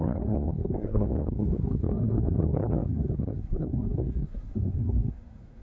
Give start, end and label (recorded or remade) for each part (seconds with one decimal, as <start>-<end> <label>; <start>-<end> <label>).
0.0-5.6 remade